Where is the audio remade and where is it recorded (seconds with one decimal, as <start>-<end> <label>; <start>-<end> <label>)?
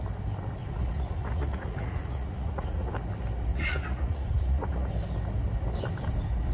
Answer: 0.0-0.6 recorded; 0.6-2.9 remade; 2.9-3.5 recorded; 3.5-4.9 remade; 4.9-6.5 recorded